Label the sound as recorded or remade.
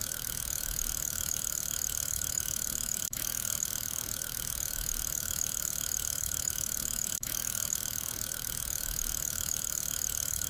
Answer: remade